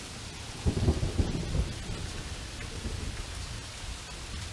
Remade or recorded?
recorded